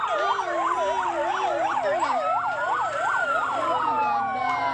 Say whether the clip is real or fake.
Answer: real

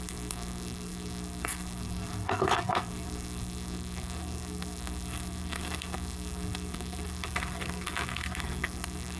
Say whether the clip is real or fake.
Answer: fake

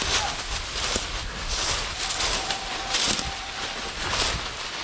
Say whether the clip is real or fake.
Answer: real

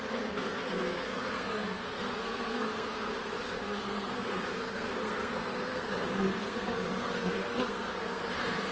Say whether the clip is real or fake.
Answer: fake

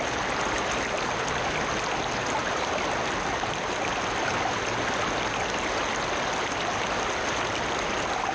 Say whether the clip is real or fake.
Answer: real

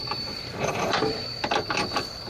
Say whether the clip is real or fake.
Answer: fake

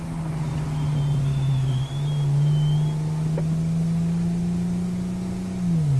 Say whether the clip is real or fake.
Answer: real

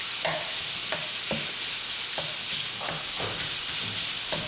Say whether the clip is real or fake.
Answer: real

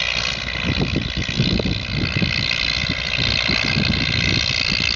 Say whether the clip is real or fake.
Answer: real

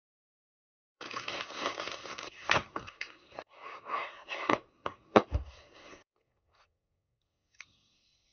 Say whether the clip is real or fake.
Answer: fake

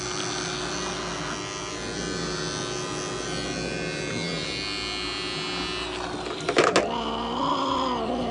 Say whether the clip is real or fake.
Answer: real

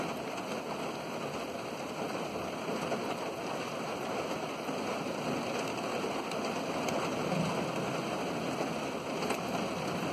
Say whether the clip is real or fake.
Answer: real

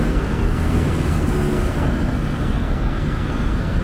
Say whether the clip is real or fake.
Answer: fake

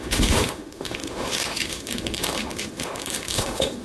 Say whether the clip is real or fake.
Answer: fake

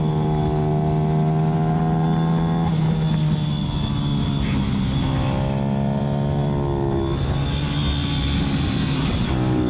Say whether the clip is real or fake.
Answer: real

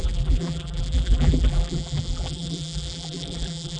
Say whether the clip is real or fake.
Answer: fake